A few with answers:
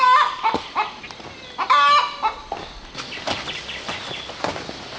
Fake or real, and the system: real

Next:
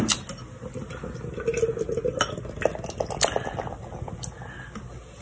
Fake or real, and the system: real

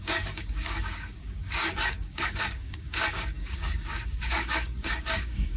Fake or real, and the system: fake, codec, DAC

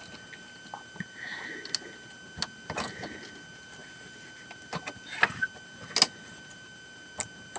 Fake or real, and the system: real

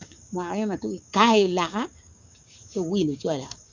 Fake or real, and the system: fake, codec, DAC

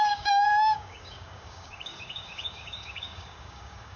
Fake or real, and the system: fake, codec, DAC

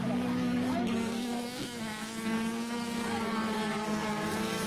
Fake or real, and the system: fake, codec, DAC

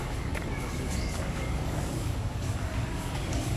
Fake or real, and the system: fake, codec, DAC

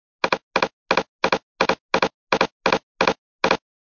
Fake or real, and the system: real